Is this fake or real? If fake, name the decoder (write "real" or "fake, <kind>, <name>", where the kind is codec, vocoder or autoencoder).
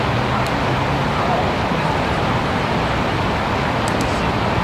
real